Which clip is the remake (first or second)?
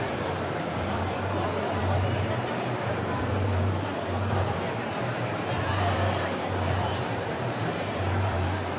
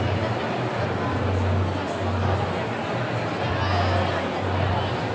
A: first